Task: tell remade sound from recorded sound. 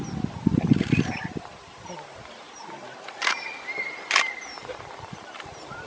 recorded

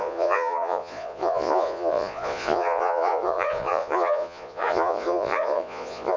remade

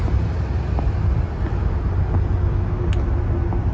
recorded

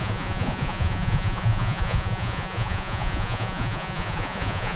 remade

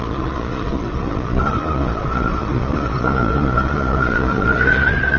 remade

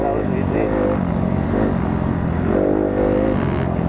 recorded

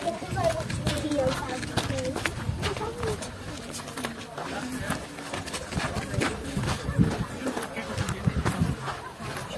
recorded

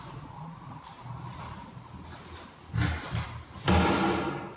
recorded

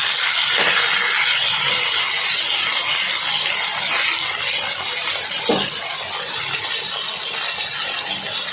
recorded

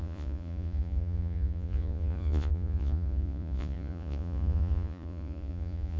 remade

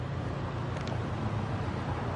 recorded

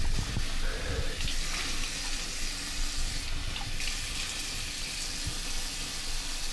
recorded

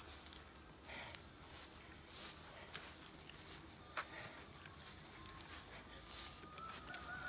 recorded